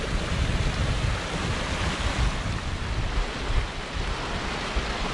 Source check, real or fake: real